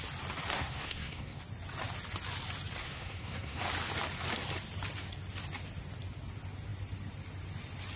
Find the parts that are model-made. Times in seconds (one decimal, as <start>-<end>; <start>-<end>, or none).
0.5-1.4; 2.8-3.6